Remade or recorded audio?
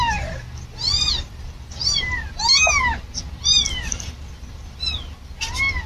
recorded